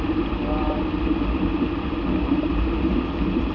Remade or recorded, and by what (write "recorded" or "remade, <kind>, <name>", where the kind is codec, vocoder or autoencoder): recorded